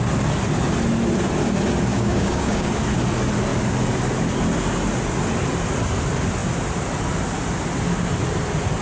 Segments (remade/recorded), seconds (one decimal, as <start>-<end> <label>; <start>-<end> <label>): 0.0-1.9 recorded; 1.9-2.7 remade; 2.7-8.8 recorded